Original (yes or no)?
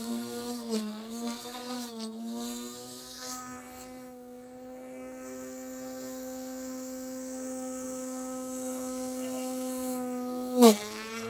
no